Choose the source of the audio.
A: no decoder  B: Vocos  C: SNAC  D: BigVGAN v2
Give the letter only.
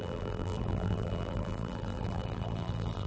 D